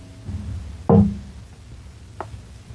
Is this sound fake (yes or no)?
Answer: no